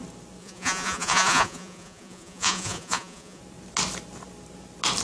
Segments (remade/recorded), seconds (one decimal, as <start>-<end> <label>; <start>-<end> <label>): 0.0-0.4 recorded; 0.4-3.4 remade; 3.4-5.0 recorded